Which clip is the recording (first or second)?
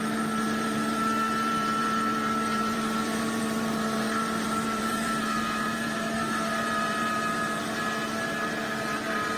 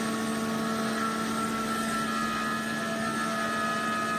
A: second